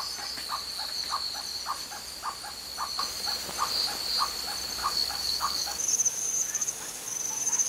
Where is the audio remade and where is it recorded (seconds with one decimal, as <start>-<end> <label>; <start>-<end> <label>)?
0.0-4.8 recorded; 4.8-7.7 remade